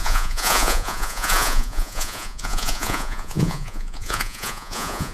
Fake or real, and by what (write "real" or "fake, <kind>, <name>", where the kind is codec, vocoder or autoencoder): fake, vocoder, Vocos